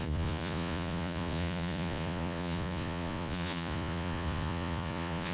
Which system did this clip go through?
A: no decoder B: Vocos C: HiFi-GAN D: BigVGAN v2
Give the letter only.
B